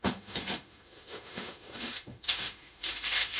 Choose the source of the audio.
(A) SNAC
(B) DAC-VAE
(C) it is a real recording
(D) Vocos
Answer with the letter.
B